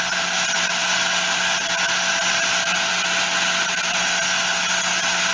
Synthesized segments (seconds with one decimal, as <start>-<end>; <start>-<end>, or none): none